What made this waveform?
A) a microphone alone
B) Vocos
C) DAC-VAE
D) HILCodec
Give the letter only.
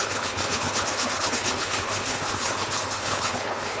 D